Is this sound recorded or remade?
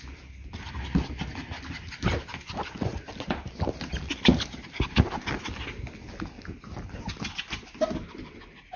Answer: recorded